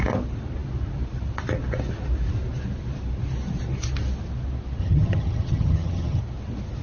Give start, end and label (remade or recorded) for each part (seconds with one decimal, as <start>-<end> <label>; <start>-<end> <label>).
0.0-4.8 recorded; 4.8-6.2 remade; 6.2-6.8 recorded